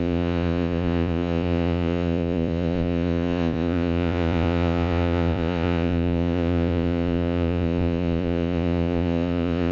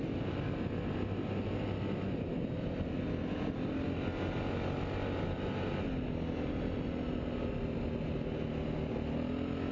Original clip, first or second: second